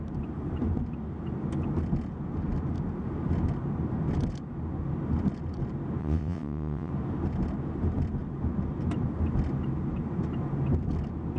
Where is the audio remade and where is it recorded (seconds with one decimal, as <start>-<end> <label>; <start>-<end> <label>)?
0.0-6.0 recorded; 6.0-6.9 remade; 6.9-11.4 recorded